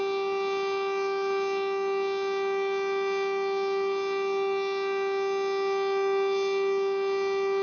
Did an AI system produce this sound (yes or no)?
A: no